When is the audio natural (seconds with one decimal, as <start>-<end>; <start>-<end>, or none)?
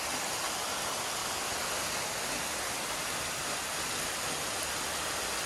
0.0-5.5